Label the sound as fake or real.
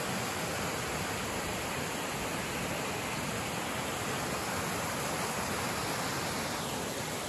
real